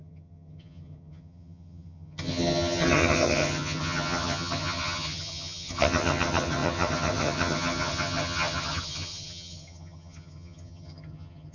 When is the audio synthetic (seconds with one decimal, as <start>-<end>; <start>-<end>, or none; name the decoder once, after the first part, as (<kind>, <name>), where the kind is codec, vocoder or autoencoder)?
0.0-11.5 (vocoder, HiFi-GAN)